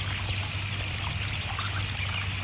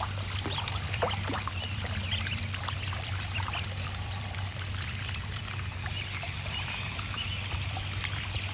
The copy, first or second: second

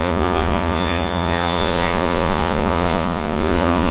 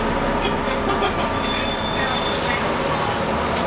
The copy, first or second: first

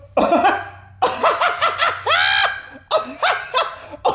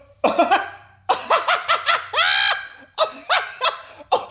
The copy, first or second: second